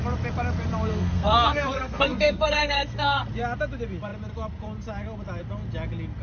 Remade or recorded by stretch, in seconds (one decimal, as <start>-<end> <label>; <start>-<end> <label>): 0.0-0.9 recorded; 0.9-3.3 remade; 3.3-6.2 recorded